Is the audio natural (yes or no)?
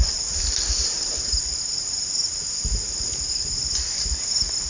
yes